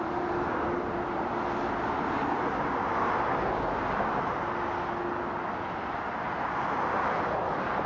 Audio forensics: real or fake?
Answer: real